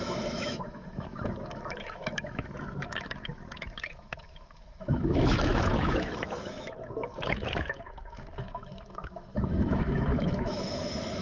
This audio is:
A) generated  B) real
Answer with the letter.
A